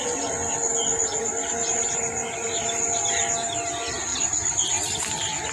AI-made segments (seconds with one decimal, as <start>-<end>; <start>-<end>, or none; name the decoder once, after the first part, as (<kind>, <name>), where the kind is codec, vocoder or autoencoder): none